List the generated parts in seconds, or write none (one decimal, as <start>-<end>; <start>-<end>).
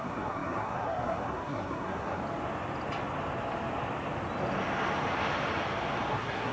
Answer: 0.0-2.2; 6.1-6.5